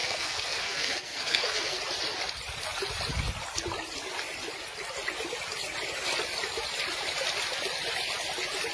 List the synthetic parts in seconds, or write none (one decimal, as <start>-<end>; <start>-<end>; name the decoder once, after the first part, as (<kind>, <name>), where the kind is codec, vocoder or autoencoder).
0.0-1.8 (codec, SNAC)